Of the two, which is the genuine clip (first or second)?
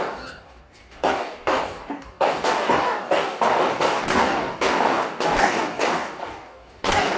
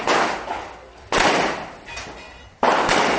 second